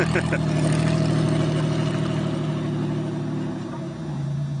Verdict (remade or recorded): recorded